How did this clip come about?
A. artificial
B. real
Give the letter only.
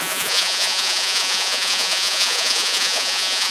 A